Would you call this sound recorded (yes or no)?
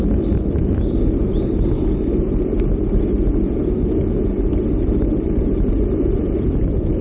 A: yes